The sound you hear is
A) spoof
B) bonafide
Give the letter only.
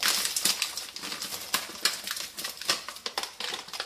B